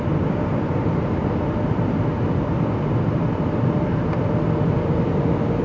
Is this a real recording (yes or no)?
yes